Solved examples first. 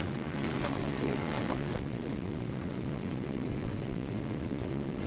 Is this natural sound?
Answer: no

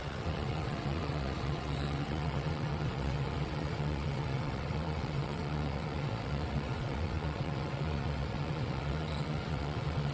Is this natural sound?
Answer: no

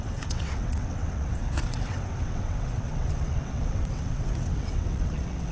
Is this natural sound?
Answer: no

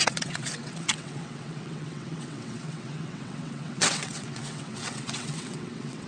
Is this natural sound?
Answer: no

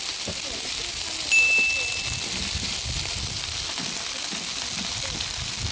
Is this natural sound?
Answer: yes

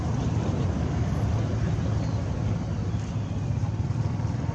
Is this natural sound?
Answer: yes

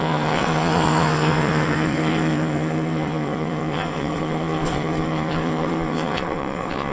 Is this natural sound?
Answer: no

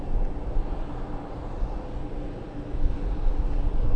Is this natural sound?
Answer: yes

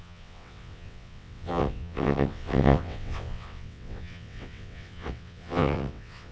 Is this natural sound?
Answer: no